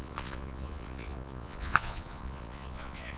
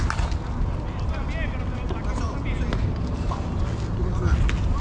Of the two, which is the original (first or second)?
second